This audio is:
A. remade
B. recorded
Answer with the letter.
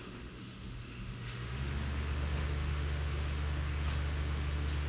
A